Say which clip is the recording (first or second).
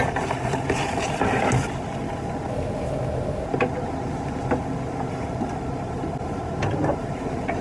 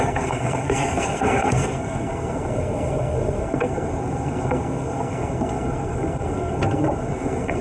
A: first